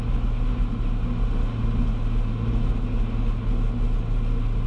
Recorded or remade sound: recorded